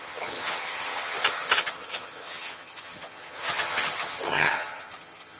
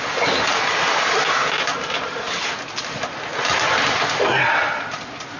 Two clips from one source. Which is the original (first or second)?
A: second